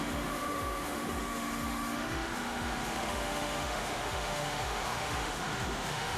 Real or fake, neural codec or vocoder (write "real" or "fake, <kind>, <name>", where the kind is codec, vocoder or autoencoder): fake, autoencoder, DAC-VAE